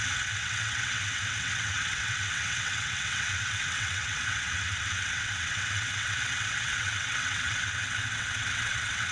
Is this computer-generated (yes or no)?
yes